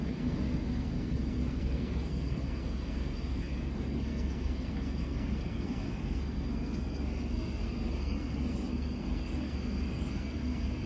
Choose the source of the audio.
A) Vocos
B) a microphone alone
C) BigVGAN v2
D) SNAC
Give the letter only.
D